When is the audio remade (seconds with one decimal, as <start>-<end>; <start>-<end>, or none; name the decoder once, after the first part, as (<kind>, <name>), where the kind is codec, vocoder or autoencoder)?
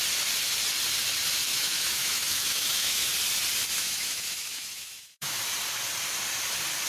1.5-3.1 (autoencoder, DAC-VAE); 3.8-5.4